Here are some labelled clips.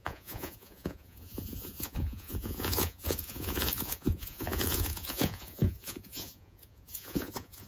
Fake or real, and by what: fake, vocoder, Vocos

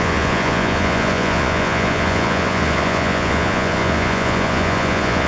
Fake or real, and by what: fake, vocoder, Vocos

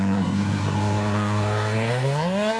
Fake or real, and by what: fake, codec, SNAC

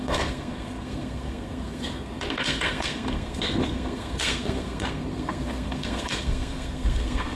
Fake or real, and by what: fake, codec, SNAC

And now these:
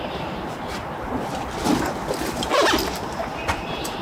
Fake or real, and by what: real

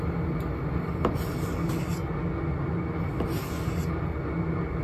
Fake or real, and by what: real